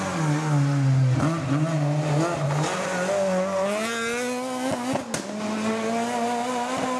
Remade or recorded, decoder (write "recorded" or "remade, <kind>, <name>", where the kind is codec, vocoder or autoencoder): recorded